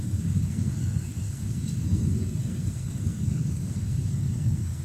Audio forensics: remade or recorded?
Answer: remade